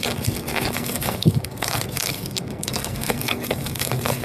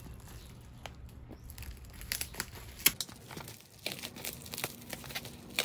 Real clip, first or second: second